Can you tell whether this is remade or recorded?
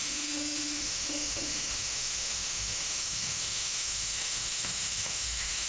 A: remade